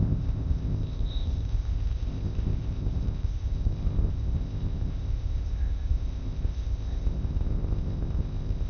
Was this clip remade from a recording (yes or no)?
yes